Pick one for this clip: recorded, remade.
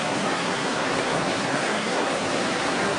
remade